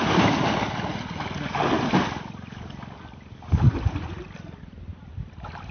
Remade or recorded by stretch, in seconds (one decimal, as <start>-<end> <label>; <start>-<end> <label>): 0.0-5.7 recorded